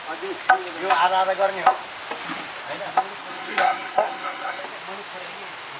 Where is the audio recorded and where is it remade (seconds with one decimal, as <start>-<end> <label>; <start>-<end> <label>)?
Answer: 0.0-3.3 recorded; 3.3-4.6 remade; 4.6-5.8 recorded